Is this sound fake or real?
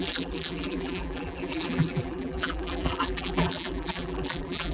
fake